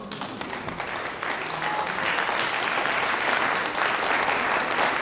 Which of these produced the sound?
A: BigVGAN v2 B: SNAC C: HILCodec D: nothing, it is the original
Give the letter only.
D